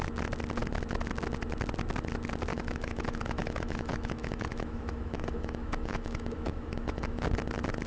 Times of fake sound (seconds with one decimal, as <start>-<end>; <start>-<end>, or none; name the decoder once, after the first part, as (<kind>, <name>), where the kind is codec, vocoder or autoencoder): 2.5-7.2 (autoencoder, DAC-VAE)